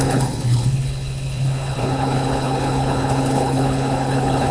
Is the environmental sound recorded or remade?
remade